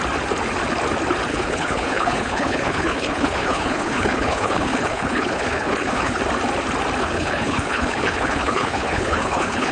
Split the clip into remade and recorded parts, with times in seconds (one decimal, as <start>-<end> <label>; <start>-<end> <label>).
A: 0.0-1.3 recorded; 1.3-6.2 remade; 6.2-7.0 recorded; 7.0-9.7 remade

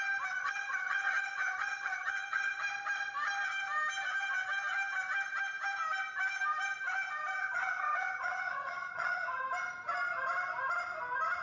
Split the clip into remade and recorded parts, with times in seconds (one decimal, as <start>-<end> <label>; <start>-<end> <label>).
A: 0.0-0.4 recorded; 0.4-2.6 remade; 2.6-7.4 recorded; 7.4-9.4 remade; 9.4-11.4 recorded

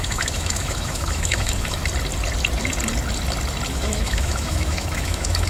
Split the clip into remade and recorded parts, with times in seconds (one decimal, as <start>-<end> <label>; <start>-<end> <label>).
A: 0.0-1.8 remade; 1.8-3.7 recorded; 3.7-5.5 remade

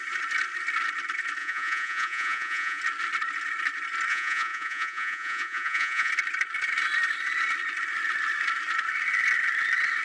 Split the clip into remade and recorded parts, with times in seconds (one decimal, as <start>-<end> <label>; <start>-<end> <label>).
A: 0.0-1.4 recorded; 1.4-2.8 remade; 2.8-4.1 recorded; 4.1-6.1 remade; 6.1-10.0 recorded